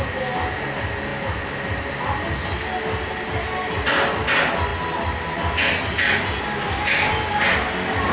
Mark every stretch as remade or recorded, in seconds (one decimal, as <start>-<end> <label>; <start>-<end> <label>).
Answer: 0.0-8.1 recorded